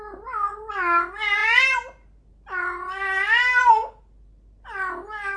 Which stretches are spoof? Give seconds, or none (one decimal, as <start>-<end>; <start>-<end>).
none